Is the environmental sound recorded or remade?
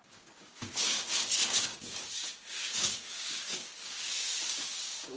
remade